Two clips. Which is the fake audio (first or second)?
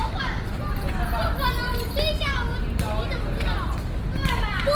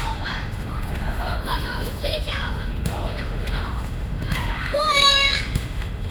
second